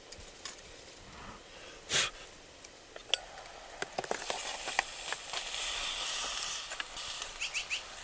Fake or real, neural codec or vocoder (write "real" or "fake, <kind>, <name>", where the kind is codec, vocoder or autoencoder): real